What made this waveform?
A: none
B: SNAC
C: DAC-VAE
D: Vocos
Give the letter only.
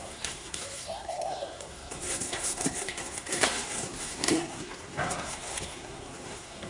B